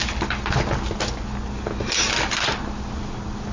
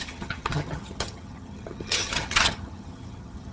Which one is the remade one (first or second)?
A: second